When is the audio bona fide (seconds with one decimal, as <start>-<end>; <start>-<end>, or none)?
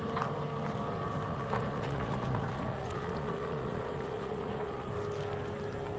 0.0-1.3; 4.9-6.0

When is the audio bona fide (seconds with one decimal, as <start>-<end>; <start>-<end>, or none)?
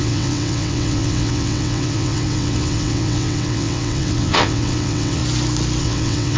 5.2-5.8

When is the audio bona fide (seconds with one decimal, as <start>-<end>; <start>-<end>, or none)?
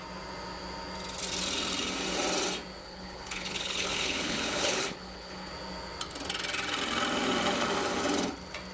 0.0-2.8; 5.5-8.7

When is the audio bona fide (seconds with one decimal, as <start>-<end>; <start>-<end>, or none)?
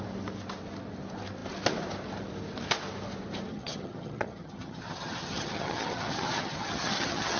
0.0-3.5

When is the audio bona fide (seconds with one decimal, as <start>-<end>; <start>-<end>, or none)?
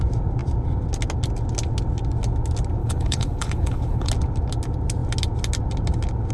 0.0-2.8; 4.1-6.3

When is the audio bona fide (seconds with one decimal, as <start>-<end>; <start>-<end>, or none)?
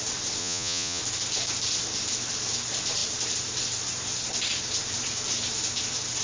0.0-0.4; 1.0-6.2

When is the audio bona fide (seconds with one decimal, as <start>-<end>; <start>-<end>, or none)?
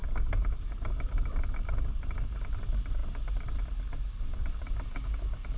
0.0-5.6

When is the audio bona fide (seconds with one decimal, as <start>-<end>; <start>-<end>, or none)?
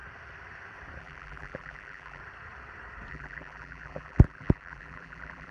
0.0-1.0; 2.2-3.1